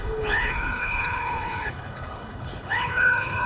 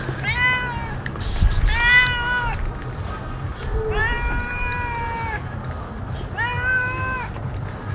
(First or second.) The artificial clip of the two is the first